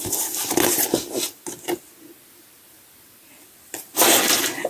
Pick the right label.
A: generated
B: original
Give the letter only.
B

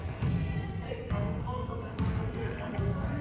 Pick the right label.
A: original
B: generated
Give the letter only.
B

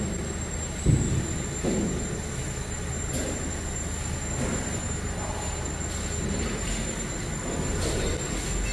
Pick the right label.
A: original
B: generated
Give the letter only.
A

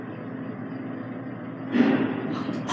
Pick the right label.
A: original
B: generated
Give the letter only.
A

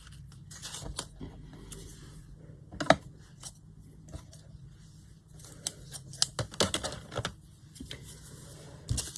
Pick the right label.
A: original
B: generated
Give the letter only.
A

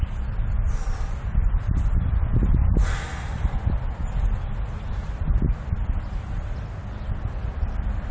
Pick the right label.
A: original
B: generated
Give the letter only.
A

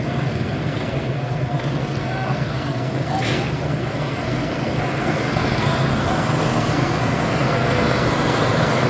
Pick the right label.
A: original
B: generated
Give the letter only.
B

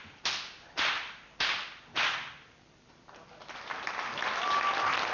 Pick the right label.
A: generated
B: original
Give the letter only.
B